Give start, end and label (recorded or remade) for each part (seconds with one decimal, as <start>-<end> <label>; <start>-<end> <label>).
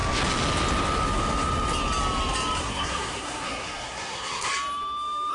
0.0-2.6 recorded; 2.6-4.5 remade; 4.5-5.3 recorded